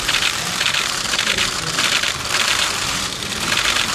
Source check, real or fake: fake